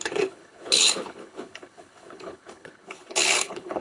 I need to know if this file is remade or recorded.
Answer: remade